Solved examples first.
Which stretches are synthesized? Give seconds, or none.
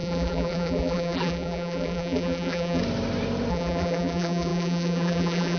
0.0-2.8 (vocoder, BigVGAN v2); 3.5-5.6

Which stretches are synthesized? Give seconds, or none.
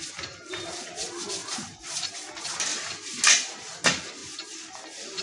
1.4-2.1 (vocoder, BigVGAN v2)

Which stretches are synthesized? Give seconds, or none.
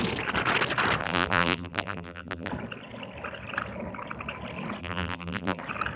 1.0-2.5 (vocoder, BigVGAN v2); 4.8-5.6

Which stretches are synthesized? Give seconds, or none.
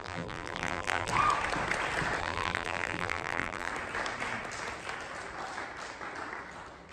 0.0-1.1 (vocoder, BigVGAN v2); 2.2-3.7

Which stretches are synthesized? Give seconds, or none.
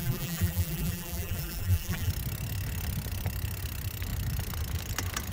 0.0-2.1 (vocoder, BigVGAN v2)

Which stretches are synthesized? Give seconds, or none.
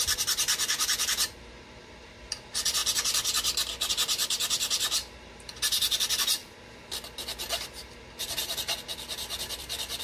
0.0-2.8 (vocoder, BigVGAN v2); 3.9-6.4; 8.2-8.9; 9.5-10.0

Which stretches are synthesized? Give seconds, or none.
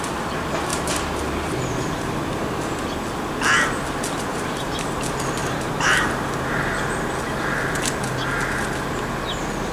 0.7-2.1 (vocoder, BigVGAN v2); 4.3-4.9; 5.4-6.9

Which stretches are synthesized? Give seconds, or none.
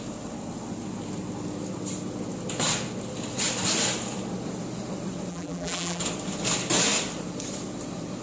5.3-6.0 (vocoder, BigVGAN v2)